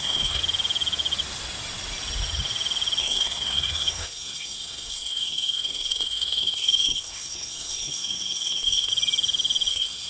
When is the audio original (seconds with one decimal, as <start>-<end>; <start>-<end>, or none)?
0.4-3.0; 8.9-9.7